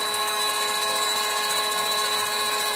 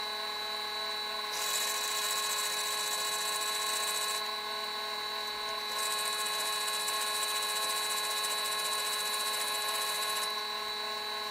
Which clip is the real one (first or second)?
second